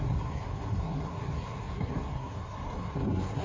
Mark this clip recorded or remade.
remade